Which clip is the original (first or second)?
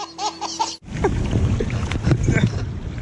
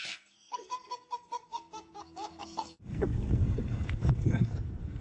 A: first